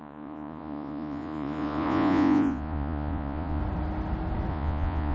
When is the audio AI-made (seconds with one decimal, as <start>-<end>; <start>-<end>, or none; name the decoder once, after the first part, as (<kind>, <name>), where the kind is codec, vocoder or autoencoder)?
0.0-3.6 (vocoder, Vocos); 4.5-5.1